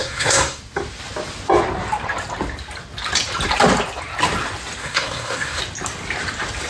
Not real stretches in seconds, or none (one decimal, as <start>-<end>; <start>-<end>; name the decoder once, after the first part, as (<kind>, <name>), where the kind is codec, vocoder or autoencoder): 0.0-0.6 (codec, SNAC); 4.8-5.6